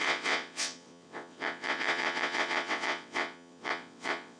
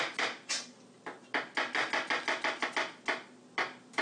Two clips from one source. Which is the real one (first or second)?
second